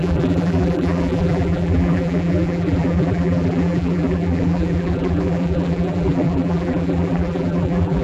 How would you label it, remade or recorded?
remade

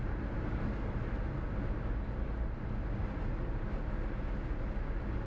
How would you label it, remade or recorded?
recorded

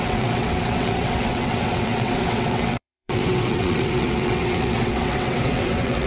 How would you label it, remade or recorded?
remade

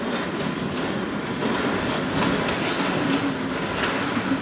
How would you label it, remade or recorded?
recorded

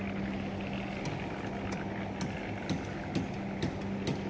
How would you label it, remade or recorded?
recorded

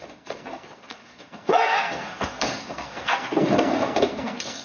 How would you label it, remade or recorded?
remade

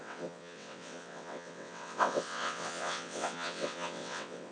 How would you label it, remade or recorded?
remade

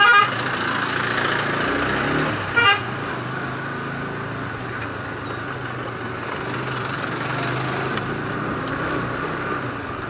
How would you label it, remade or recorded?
recorded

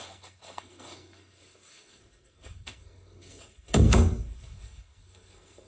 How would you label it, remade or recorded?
remade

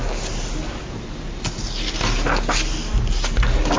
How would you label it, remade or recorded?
recorded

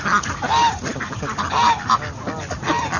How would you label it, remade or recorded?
recorded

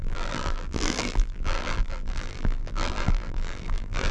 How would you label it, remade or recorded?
remade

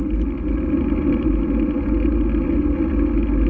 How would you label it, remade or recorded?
recorded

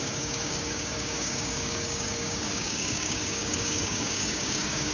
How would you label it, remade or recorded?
remade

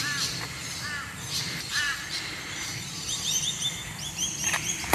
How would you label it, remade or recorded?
recorded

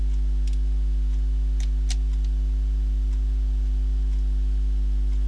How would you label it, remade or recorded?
recorded